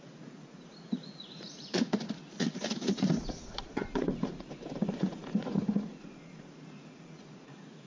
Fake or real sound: fake